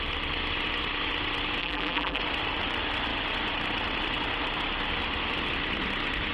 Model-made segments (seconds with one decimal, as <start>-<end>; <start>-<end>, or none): 1.6-2.2